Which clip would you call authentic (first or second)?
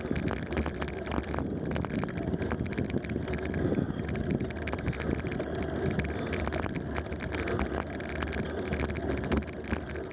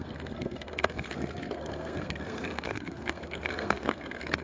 first